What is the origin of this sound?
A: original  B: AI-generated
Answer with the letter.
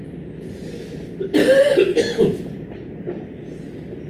A